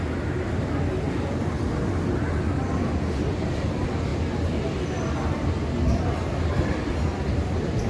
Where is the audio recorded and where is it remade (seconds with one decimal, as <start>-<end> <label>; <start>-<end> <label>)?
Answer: 0.0-7.9 recorded